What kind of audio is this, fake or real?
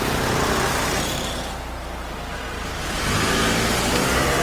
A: real